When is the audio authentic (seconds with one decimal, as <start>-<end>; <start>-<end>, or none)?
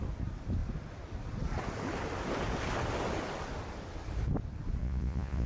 0.0-4.8